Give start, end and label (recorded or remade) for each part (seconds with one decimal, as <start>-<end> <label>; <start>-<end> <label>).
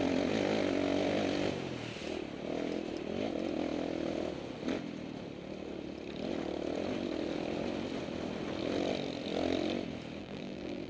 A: 0.0-10.2 recorded; 10.2-10.9 remade